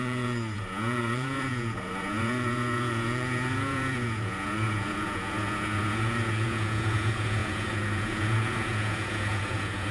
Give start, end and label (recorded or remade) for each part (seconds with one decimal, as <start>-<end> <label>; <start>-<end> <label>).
0.0-9.9 remade